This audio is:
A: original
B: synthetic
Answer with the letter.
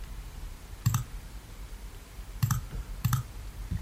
B